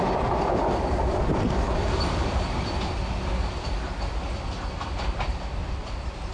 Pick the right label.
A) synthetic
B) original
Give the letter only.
B